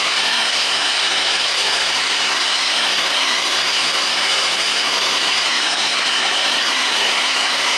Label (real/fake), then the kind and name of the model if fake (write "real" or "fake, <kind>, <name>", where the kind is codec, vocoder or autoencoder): fake, codec, SNAC